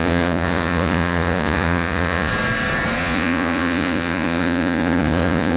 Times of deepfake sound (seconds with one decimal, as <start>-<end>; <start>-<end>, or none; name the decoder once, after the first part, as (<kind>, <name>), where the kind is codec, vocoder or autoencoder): 0.0-2.3 (vocoder, Vocos); 3.0-5.6